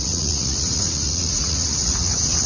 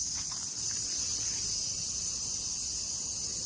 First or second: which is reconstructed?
first